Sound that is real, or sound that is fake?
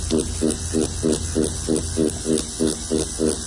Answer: real